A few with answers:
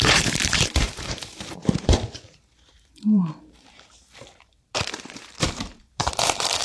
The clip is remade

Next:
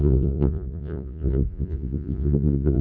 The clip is remade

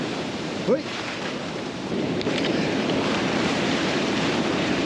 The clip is remade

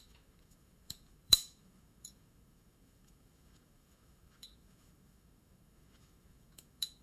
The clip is remade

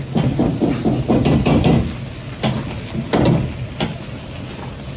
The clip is recorded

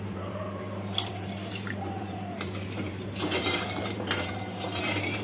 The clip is remade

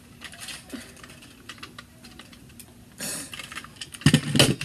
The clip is recorded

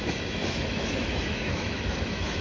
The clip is remade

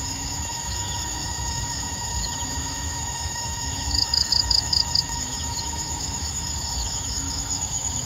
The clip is remade